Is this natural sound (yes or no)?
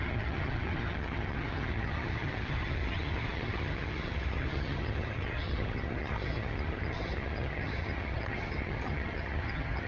no